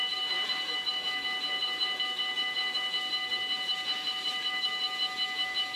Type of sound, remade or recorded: remade